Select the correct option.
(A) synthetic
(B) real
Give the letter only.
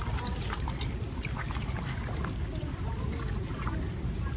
B